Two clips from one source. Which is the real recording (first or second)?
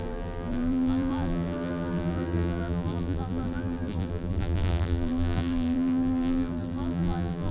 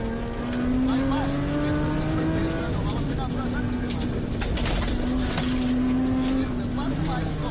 second